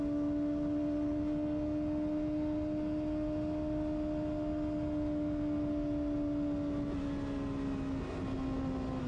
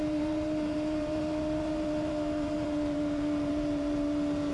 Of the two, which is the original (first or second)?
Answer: first